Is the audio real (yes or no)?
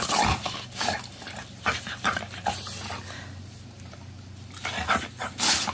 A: yes